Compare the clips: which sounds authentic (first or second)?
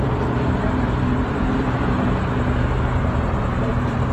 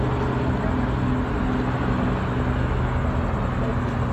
second